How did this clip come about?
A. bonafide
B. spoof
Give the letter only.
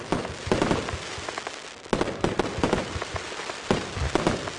A